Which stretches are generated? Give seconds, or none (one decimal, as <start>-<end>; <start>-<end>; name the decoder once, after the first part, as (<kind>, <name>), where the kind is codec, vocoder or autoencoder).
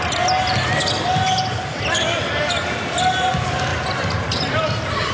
none